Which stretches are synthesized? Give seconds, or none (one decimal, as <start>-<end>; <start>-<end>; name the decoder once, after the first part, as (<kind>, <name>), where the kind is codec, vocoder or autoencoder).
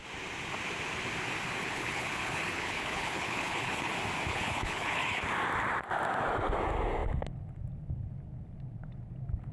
1.6-3.9 (codec, HILCodec); 4.3-5.2